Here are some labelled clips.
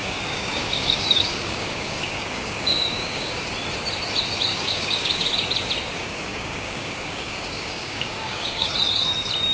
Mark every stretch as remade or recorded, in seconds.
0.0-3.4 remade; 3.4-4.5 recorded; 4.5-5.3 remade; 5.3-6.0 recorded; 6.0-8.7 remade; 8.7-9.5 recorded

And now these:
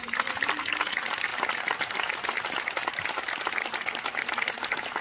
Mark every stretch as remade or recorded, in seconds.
0.0-5.0 recorded

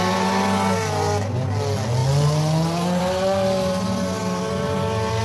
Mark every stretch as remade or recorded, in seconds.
0.0-5.2 recorded

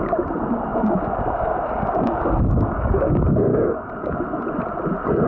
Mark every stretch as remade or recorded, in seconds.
0.0-0.7 recorded; 0.7-3.1 remade; 3.1-3.5 recorded; 3.5-4.1 remade; 4.1-5.3 recorded

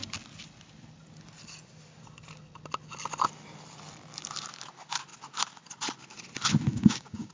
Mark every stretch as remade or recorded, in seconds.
0.0-6.7 recorded; 6.7-7.3 remade

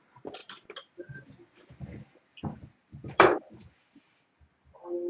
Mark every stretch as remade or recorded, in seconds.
0.0-5.1 recorded